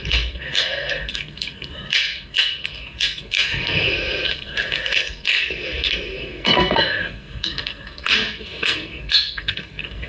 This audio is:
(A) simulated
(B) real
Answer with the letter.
A